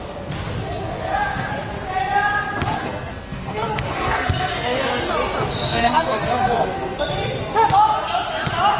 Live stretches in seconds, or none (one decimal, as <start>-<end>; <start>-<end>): 0.0-0.6; 1.5-2.8; 5.1-5.7; 7.0-8.8

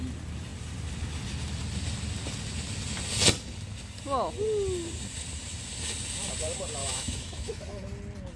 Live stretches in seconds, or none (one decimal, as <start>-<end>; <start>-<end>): 0.0-6.8; 7.6-8.4

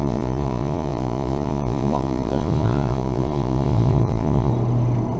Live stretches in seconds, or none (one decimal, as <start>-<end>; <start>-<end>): 4.5-5.2